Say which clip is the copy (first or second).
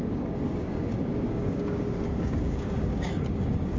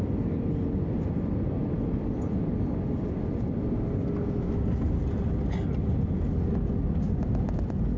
first